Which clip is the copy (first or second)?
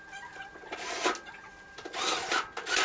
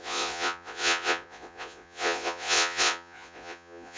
second